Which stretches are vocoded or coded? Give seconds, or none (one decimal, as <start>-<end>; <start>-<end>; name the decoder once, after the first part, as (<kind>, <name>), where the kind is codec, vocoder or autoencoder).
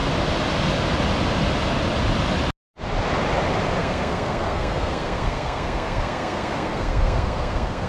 3.8-7.9 (codec, SNAC)